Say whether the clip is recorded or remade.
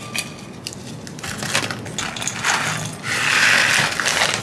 recorded